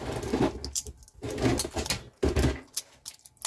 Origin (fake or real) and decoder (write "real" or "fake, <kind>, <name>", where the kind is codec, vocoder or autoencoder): real